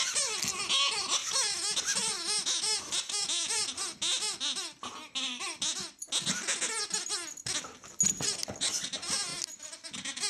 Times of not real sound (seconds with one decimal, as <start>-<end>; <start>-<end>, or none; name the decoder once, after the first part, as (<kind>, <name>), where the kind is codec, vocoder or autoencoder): none